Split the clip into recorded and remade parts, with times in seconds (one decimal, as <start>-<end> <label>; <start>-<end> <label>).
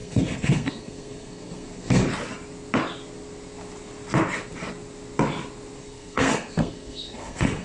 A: 0.0-2.0 remade; 2.0-5.8 recorded; 5.8-7.6 remade